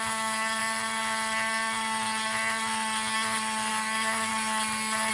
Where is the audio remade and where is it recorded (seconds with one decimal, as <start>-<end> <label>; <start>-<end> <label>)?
0.0-0.6 remade; 0.6-3.7 recorded; 3.7-4.3 remade; 4.3-5.1 recorded